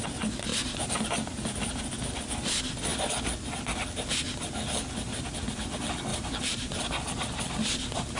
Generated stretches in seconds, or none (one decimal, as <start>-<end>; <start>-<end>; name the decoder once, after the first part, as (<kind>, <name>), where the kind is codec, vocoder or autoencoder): 0.5-1.8 (vocoder, BigVGAN v2); 6.1-6.8